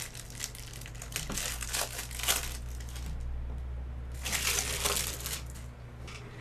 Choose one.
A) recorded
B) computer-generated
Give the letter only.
A